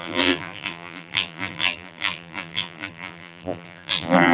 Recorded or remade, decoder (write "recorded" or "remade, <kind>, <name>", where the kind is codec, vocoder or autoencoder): remade, vocoder, BigVGAN v2